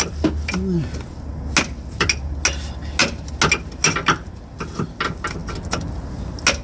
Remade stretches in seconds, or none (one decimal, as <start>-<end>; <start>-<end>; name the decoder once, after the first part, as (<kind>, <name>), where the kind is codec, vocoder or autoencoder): none